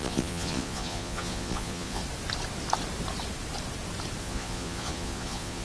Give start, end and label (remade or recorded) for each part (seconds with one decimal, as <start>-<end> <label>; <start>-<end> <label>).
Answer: 0.0-2.0 remade; 2.0-4.2 recorded; 4.2-5.6 remade